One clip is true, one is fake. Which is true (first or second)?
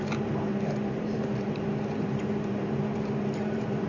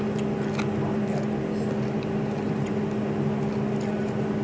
second